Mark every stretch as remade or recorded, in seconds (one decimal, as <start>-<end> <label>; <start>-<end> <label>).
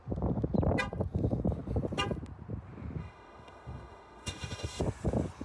0.0-3.0 recorded; 3.0-4.8 remade; 4.8-5.4 recorded